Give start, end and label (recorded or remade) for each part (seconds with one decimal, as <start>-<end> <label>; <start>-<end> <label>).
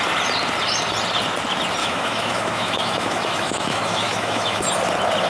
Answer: 0.0-1.8 recorded; 1.8-4.6 remade; 4.6-5.3 recorded